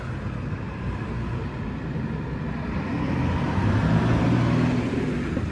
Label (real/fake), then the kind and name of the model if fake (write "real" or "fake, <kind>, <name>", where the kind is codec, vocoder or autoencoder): real